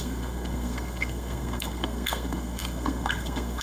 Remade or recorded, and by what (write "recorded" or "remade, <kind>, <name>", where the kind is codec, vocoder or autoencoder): remade, codec, SNAC